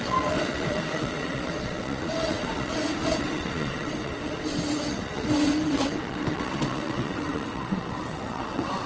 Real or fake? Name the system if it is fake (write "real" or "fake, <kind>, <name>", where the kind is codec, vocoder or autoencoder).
fake, vocoder, WaveNeXt